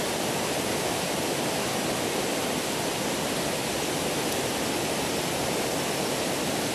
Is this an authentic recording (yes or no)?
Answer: yes